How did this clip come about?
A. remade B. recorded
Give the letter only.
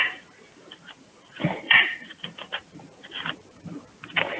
A